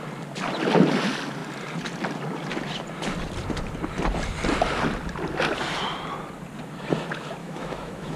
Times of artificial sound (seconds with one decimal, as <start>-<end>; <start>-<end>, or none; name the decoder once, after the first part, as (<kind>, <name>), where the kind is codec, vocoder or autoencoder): 7.4-8.2 (autoencoder, DAC-VAE)

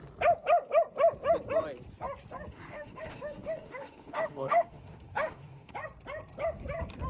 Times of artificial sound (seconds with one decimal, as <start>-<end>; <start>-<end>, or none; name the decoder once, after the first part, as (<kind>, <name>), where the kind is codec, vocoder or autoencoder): 2.5-5.7 (autoencoder, DAC-VAE)

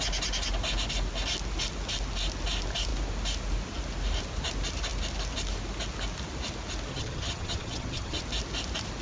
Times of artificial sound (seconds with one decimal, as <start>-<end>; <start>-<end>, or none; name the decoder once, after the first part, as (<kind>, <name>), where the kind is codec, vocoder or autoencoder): 6.9-8.2 (vocoder, HiFi-GAN)

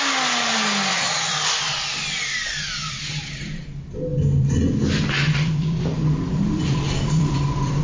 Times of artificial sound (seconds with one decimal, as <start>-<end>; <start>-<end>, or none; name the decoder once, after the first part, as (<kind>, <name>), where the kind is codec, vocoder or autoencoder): 0.9-1.6 (vocoder, BigVGAN v2); 2.4-3.1; 4.1-7.8

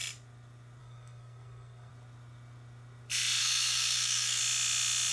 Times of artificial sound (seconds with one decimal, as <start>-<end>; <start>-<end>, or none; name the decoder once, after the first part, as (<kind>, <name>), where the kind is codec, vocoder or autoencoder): 0.8-1.9 (codec, SNAC); 3.4-4.4

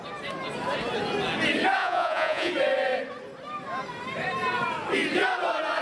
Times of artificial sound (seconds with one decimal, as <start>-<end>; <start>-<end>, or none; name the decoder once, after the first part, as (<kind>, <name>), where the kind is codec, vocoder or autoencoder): 1.8-2.5 (vocoder, Vocos)